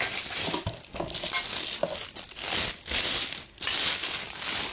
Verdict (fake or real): real